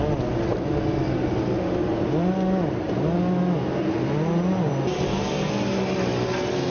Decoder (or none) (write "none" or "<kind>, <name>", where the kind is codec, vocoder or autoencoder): none